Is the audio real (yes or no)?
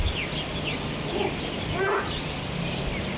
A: yes